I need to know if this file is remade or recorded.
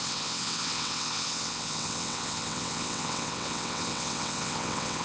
remade